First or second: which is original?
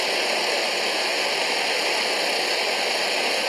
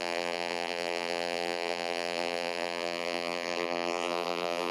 first